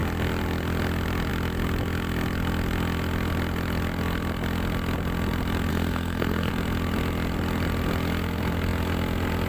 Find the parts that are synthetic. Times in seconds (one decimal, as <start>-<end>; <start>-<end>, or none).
5.7-6.5